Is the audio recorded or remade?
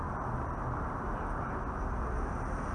recorded